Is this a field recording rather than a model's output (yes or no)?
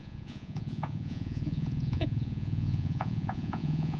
no